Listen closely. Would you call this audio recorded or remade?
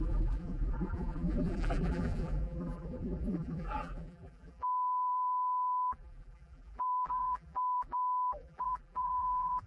remade